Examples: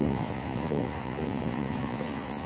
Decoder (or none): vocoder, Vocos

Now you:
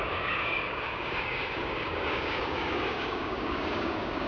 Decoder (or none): codec, DAC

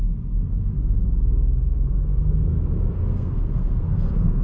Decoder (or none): codec, SNAC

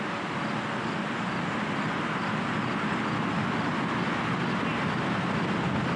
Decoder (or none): none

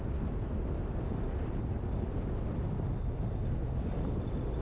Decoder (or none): none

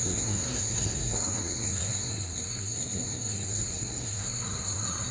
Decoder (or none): codec, SNAC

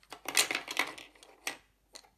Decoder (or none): none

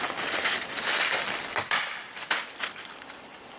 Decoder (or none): vocoder, BigVGAN v2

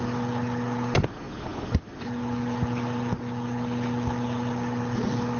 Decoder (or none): none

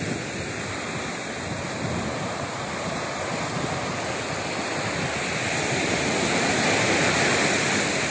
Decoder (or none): none